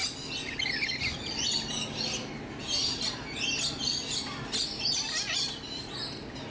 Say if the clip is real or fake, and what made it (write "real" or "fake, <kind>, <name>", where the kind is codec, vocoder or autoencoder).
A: real